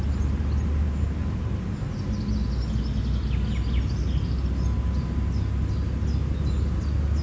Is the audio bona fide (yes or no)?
yes